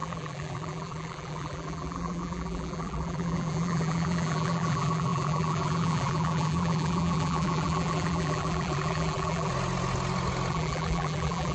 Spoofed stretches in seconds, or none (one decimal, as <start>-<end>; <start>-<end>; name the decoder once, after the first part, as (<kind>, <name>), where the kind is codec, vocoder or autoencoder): 0.0-9.5 (vocoder, BigVGAN v2); 10.5-11.5